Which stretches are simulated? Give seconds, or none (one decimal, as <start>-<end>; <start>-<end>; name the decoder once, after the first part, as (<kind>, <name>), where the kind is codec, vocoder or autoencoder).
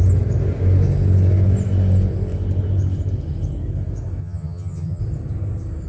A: 4.2-5.0 (vocoder, HiFi-GAN)